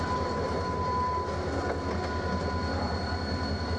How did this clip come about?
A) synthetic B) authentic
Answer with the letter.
B